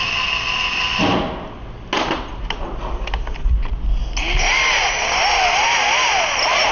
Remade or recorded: recorded